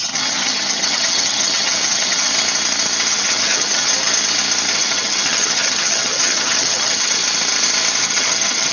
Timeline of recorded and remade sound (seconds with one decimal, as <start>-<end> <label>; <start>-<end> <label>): 0.0-2.3 remade; 2.3-3.1 recorded; 3.1-3.9 remade; 3.9-4.7 recorded; 4.7-7.2 remade; 7.2-8.0 recorded; 8.0-8.7 remade